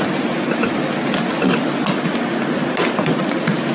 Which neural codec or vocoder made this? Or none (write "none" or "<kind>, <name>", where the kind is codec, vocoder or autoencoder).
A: none